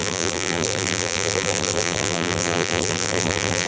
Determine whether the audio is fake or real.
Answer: fake